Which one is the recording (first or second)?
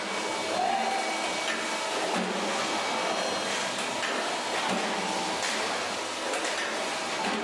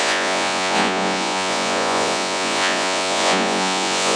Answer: first